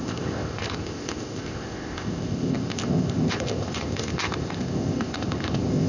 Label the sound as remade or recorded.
remade